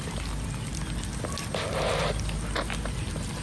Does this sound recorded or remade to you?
recorded